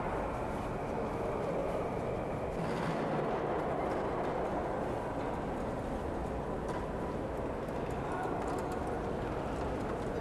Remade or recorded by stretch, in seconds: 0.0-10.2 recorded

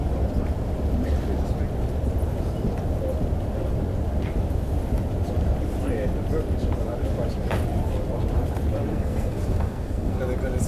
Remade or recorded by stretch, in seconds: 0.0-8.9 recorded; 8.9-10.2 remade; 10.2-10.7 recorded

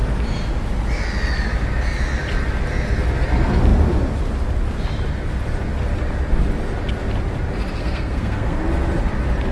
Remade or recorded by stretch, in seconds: 0.0-7.8 recorded; 7.8-8.6 remade; 8.6-9.5 recorded

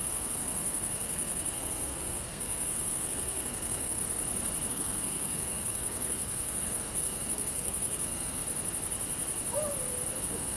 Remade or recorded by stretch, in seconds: 0.0-4.0 remade; 4.0-4.7 recorded; 4.7-8.4 remade; 8.4-10.2 recorded; 10.2-10.6 remade

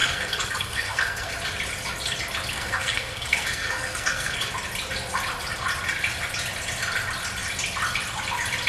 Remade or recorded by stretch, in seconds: 0.0-1.3 remade; 1.3-2.5 recorded; 2.5-4.4 remade; 4.4-8.7 recorded